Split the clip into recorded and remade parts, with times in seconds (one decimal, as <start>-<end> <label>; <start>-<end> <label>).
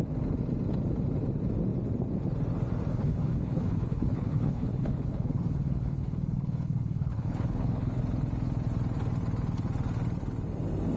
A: 0.0-2.9 recorded; 2.9-8.0 remade; 8.0-11.0 recorded